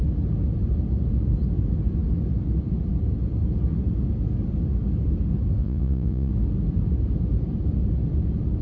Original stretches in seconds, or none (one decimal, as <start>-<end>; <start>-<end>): 0.0-5.6; 6.3-8.6